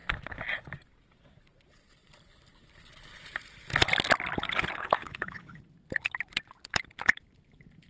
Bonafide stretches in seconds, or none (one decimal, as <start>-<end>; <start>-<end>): 0.0-4.8; 5.6-7.9